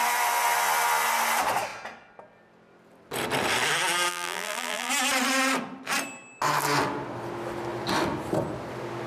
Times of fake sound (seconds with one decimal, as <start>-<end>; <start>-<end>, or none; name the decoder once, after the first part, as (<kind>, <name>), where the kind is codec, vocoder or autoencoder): 4.1-4.9 (vocoder, BigVGAN v2)